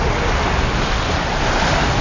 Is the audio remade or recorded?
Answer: recorded